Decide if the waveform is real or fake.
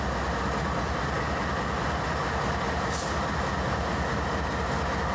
real